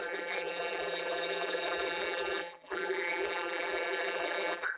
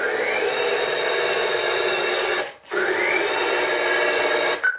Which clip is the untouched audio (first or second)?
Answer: second